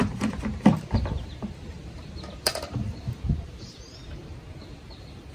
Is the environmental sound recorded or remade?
remade